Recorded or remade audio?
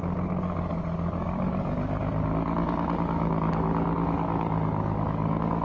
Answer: remade